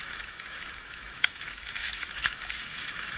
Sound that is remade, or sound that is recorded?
remade